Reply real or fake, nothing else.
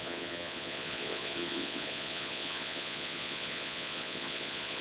fake